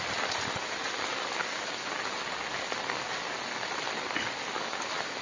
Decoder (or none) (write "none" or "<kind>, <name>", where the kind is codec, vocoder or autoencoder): none